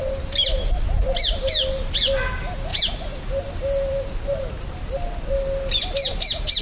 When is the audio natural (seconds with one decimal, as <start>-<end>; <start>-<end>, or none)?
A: 0.0-2.7; 4.9-6.6